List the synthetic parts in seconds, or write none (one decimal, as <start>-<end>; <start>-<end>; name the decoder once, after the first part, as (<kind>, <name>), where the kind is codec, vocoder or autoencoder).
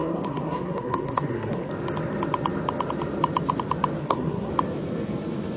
0.0-1.7 (codec, SNAC); 4.0-4.5